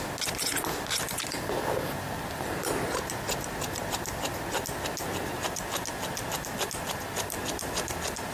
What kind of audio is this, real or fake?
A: real